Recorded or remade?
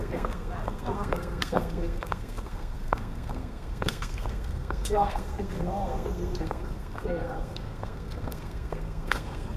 remade